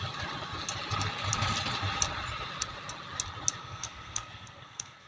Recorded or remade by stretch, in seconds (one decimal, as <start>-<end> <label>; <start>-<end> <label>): 0.0-3.6 recorded; 3.6-5.1 remade